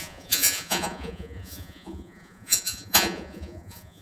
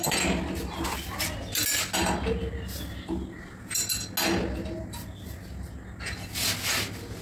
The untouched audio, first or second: second